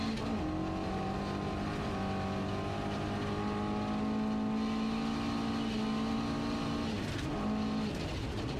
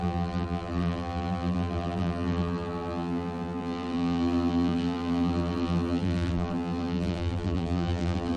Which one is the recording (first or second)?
first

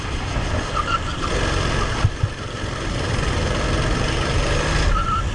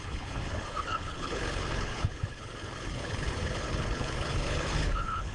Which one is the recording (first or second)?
first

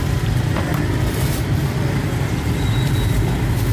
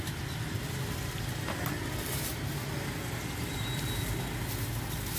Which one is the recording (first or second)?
second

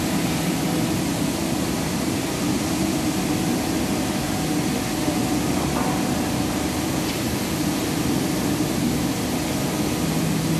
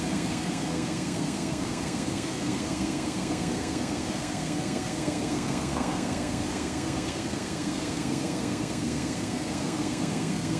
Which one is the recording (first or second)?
first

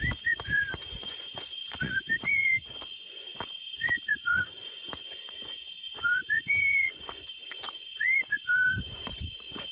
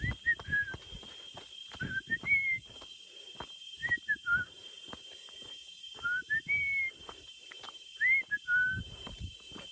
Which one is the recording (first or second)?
second